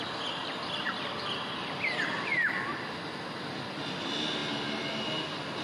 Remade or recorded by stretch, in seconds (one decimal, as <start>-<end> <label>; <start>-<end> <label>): 0.0-0.4 recorded; 0.4-3.8 remade; 3.8-5.6 recorded